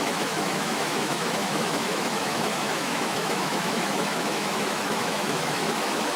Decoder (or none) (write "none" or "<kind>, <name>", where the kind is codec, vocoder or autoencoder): autoencoder, DAC-VAE